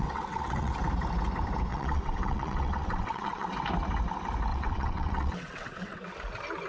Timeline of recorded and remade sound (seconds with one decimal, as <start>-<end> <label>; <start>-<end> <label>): 0.0-0.7 remade; 0.7-1.7 recorded; 1.7-3.5 remade; 3.5-4.5 recorded; 4.5-6.0 remade; 6.0-6.7 recorded

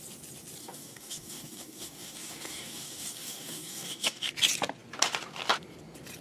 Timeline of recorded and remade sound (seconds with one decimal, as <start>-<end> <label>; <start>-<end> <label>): 0.0-0.6 recorded; 0.6-4.3 remade; 4.3-6.2 recorded

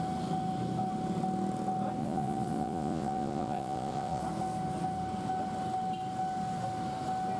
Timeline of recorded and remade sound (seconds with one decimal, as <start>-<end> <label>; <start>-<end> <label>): 0.0-2.0 recorded; 2.0-4.2 remade; 4.2-7.4 recorded